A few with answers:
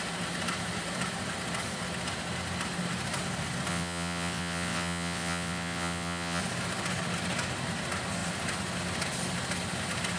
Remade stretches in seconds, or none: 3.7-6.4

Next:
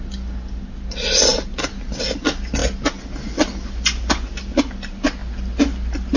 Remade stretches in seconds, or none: none